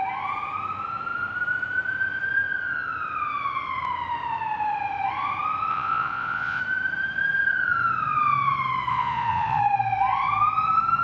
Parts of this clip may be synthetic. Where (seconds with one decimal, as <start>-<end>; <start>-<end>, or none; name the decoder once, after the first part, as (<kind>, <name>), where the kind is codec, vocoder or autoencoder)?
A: 5.7-6.6 (vocoder, Vocos); 8.9-9.6